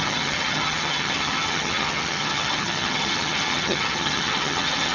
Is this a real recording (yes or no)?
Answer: no